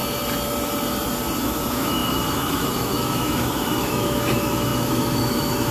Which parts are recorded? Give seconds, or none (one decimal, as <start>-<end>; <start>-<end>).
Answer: 0.0-1.4